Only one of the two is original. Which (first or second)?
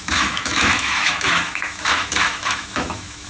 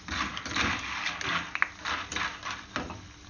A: second